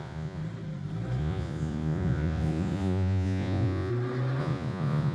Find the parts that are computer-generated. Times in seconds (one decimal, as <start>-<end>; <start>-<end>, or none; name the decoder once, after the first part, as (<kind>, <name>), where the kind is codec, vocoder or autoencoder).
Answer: 0.0-0.4 (vocoder, Vocos); 1.2-3.9; 4.4-5.1